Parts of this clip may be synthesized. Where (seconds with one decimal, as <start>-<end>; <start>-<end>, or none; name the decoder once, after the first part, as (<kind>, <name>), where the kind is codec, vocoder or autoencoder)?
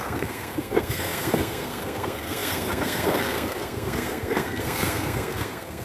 0.0-5.8 (codec, SNAC)